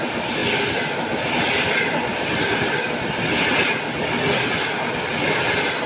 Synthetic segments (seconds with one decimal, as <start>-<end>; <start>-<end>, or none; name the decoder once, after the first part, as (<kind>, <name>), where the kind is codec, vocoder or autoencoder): none